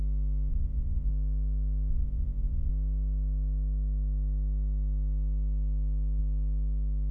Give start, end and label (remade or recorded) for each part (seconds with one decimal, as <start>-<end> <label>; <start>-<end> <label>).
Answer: 0.0-0.5 recorded; 0.5-1.1 remade; 1.1-1.9 recorded; 1.9-2.7 remade; 2.7-7.1 recorded